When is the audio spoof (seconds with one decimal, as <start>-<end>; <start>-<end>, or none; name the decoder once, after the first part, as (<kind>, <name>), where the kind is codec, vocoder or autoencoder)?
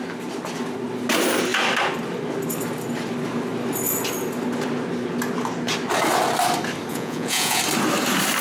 6.9-7.6 (vocoder, Vocos)